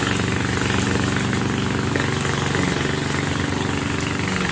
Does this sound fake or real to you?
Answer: real